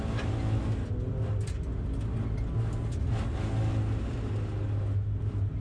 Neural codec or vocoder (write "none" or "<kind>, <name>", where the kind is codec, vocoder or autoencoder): none